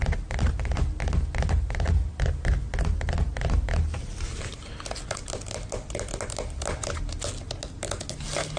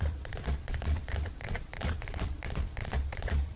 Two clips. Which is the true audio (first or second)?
first